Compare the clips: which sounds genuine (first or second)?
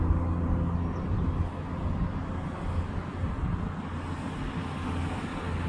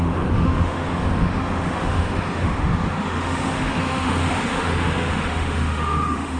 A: first